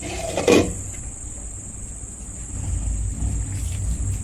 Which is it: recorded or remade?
recorded